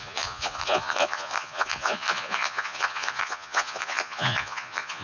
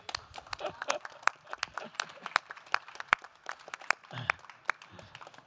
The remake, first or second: first